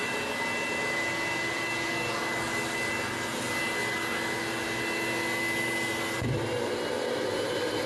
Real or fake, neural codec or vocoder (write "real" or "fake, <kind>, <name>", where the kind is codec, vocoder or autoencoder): real